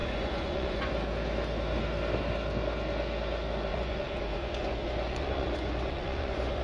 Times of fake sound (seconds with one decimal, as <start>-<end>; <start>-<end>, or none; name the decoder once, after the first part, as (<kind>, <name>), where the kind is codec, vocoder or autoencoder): 0.0-0.9 (vocoder, Vocos); 3.7-6.6